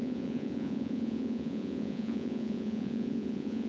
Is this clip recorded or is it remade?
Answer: remade